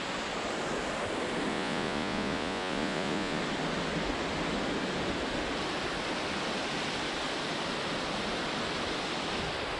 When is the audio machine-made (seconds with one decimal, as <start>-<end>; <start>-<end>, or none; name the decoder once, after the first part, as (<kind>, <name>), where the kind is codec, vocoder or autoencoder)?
1.5-3.4 (vocoder, Vocos)